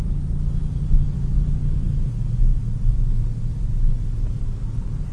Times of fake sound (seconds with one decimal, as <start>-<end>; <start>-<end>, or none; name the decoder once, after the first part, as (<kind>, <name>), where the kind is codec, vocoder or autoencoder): 2.5-3.1 (vocoder, BigVGAN v2)